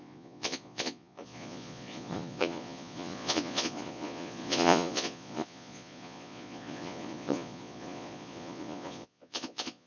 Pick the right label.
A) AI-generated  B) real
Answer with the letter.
A